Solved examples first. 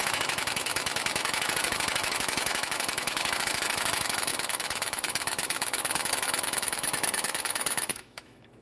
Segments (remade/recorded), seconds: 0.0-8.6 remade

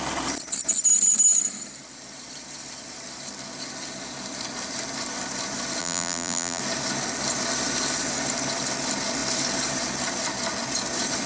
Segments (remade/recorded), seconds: 0.0-5.8 recorded; 5.8-6.6 remade; 6.6-11.3 recorded

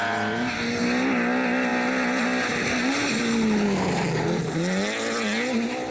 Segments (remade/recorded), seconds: 0.0-5.9 recorded

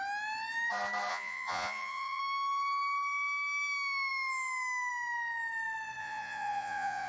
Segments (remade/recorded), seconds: 0.0-1.1 recorded; 1.1-2.2 remade; 2.2-6.0 recorded; 6.0-7.1 remade